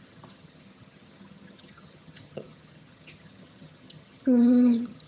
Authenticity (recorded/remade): remade